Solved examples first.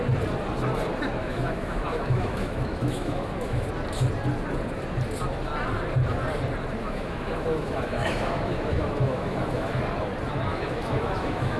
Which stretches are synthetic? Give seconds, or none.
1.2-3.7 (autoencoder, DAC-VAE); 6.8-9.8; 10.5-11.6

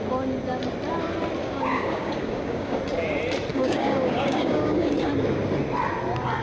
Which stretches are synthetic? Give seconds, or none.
1.4-2.8 (codec, DAC); 3.5-5.1